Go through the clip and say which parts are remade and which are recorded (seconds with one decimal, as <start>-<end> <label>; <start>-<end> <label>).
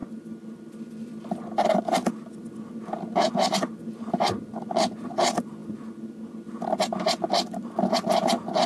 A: 0.0-8.7 recorded